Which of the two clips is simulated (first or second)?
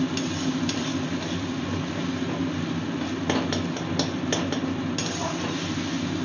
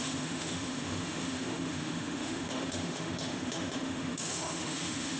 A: second